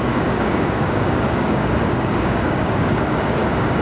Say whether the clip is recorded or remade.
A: remade